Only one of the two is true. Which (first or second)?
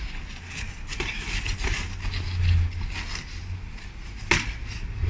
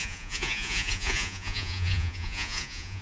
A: first